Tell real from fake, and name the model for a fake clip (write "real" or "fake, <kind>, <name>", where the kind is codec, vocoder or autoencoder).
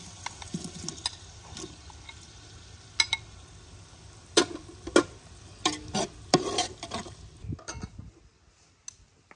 real